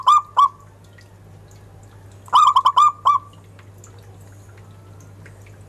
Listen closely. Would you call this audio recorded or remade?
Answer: recorded